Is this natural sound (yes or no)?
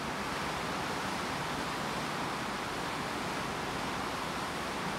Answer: yes